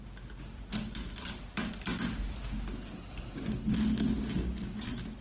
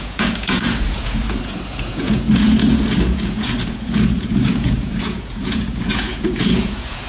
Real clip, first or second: first